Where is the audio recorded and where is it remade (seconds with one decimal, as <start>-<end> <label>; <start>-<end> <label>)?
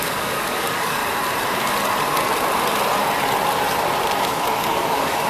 0.0-1.0 remade; 1.0-4.2 recorded; 4.2-5.3 remade